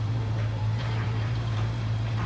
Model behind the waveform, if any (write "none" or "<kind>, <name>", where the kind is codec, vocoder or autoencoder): vocoder, BigVGAN v2